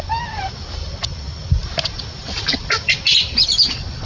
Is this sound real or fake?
real